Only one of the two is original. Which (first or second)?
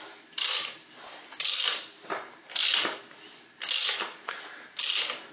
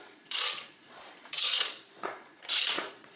first